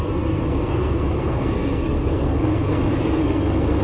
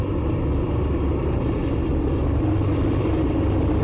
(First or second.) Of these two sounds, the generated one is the first